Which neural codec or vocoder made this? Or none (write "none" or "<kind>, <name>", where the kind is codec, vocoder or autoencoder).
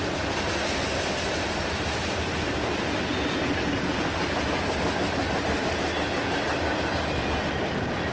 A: none